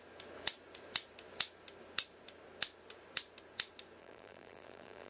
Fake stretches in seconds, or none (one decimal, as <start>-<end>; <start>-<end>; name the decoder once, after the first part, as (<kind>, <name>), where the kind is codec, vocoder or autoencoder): 4.0-5.1 (vocoder, BigVGAN v2)